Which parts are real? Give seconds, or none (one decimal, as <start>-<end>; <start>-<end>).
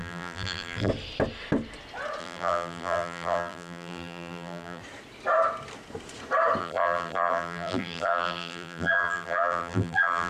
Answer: 0.9-2.2; 4.8-6.6